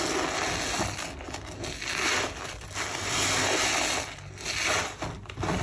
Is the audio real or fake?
real